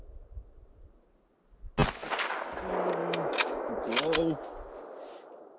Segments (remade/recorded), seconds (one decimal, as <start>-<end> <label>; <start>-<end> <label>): 0.0-3.0 recorded; 3.0-3.7 remade; 3.7-5.6 recorded